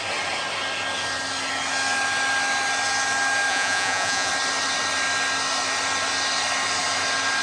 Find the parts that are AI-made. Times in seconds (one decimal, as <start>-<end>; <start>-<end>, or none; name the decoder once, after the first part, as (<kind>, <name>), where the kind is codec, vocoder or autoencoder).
3.5-4.3 (vocoder, Vocos)